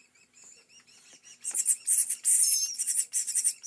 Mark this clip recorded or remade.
remade